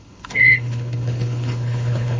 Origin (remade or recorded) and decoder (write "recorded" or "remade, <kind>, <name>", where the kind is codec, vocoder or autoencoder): remade, codec, HILCodec